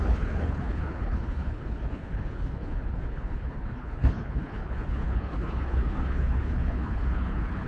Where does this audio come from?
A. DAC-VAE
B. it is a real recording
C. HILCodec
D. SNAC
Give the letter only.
C